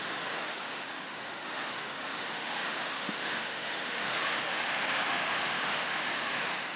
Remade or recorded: remade